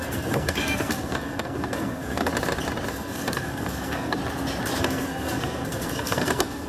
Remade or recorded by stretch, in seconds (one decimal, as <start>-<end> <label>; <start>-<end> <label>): 0.0-2.3 remade; 2.3-2.9 recorded; 2.9-4.2 remade; 4.2-4.8 recorded; 4.8-6.7 remade